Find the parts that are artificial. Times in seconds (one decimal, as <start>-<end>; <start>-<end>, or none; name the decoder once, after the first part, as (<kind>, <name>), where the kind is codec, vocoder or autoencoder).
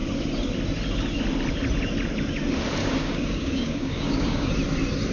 2.8-4.5 (codec, DAC)